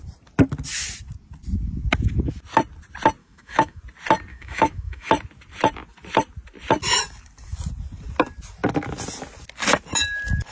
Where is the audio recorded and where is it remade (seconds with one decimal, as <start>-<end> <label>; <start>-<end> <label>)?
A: 0.0-3.2 recorded; 3.2-3.8 remade; 3.8-4.3 recorded; 4.3-5.1 remade; 5.1-10.5 recorded